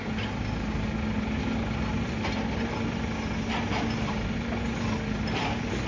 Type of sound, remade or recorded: recorded